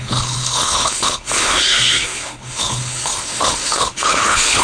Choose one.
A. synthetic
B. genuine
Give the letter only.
A